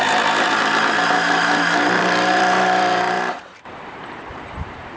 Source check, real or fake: fake